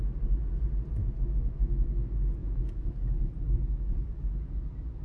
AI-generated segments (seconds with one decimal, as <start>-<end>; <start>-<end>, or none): 2.4-3.2